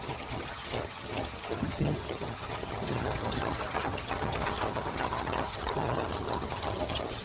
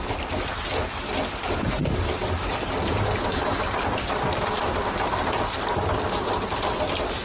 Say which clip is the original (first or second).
second